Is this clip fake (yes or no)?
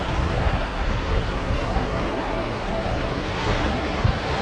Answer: yes